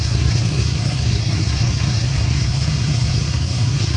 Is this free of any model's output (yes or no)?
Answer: no